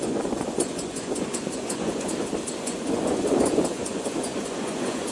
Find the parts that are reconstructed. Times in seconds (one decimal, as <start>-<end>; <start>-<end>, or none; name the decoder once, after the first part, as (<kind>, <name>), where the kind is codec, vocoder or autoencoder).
0.0-2.1 (vocoder, Vocos); 2.6-5.1